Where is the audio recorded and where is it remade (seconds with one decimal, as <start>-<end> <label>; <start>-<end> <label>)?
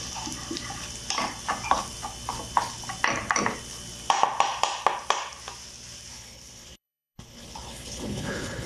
0.0-6.1 recorded; 6.1-8.7 remade